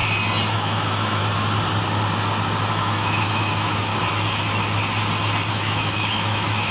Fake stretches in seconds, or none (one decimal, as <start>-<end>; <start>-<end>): 0.5-1.2; 2.7-3.9; 5.5-6.7